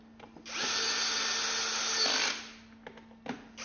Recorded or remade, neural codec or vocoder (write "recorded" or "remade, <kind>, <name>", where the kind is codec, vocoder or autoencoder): recorded